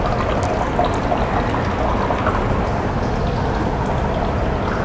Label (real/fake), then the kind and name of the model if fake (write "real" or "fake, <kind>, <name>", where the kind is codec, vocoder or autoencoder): real